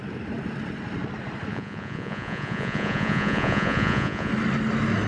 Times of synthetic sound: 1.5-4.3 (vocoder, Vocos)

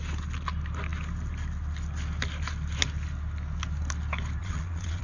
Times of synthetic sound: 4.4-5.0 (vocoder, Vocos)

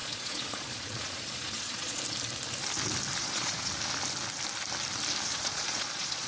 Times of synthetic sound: 0.0-2.0 (vocoder, Vocos); 3.2-3.7; 5.3-6.3

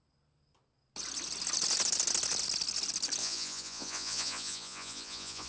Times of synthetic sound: 3.2-5.5 (vocoder, Vocos)